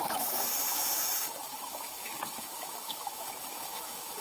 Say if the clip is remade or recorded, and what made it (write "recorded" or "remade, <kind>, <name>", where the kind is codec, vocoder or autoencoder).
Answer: remade, autoencoder, DAC-VAE